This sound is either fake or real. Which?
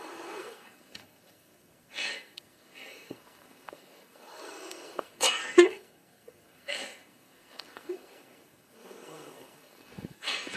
fake